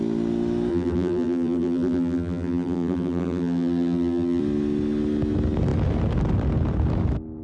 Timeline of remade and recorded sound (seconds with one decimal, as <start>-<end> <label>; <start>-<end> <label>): 0.0-0.7 recorded; 0.7-4.4 remade; 4.4-7.4 recorded